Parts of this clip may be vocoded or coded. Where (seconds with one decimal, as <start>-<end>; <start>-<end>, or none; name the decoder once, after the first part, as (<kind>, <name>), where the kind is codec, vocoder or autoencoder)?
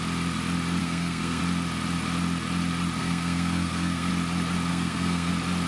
0.8-1.4 (codec, SNAC); 3.0-4.1; 4.7-5.3